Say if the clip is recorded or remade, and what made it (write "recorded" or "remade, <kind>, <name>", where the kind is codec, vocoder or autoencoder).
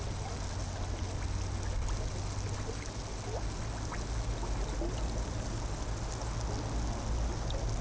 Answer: recorded